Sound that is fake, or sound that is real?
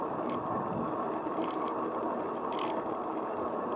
real